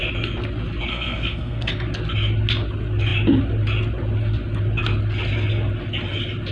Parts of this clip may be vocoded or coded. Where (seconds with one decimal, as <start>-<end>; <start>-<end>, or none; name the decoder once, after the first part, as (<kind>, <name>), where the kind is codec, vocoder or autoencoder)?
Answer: 0.9-1.7 (codec, SNAC)